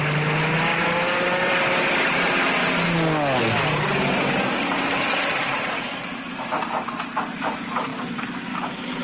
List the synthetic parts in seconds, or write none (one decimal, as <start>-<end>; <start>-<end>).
0.7-1.5; 7.9-8.5